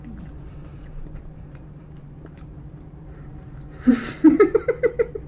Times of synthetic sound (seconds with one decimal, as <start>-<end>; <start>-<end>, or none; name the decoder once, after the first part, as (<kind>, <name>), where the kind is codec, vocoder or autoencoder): 0.7-3.9 (vocoder, BigVGAN v2)